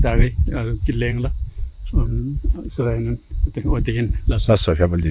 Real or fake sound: fake